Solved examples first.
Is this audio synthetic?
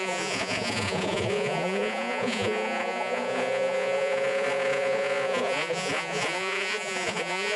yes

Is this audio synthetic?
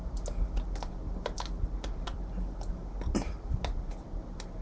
no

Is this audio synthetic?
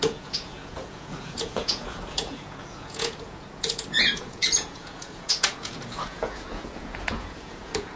yes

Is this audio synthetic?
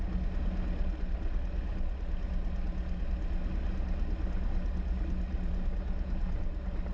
no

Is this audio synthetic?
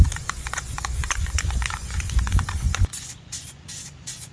yes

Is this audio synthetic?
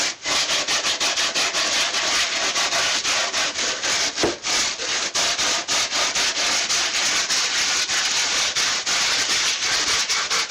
no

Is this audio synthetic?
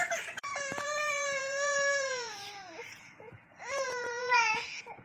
yes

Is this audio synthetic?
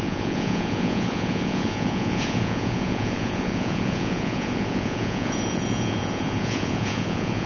yes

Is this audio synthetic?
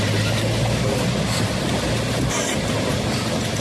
no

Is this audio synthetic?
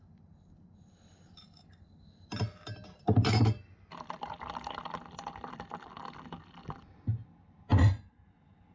no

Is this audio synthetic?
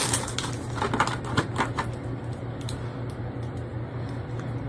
no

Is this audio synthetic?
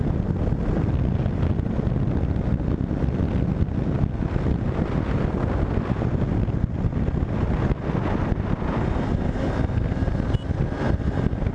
no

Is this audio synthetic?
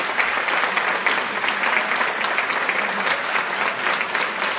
no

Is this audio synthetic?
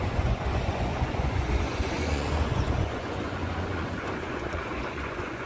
yes